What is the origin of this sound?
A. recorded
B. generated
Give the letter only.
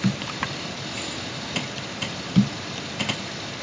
B